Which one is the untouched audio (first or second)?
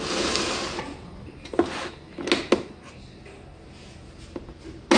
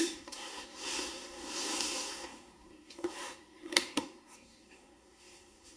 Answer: first